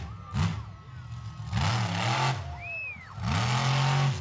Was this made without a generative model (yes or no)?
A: yes